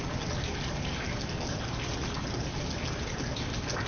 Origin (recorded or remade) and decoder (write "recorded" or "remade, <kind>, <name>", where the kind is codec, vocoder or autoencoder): recorded